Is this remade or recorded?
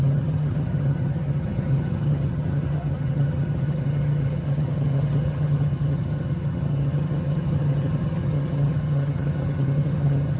remade